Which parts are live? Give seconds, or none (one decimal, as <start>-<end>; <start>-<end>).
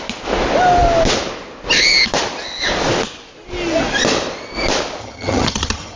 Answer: 0.0-5.0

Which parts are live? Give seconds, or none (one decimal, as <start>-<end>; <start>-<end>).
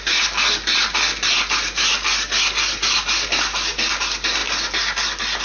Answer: 0.0-5.4